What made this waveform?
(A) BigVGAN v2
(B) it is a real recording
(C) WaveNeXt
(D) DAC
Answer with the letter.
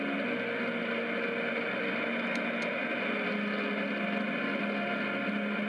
B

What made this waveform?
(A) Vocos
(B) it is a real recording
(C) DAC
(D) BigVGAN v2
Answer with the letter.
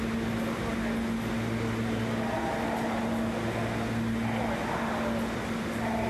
B